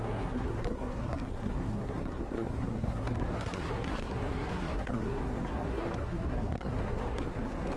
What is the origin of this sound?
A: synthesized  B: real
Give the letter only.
A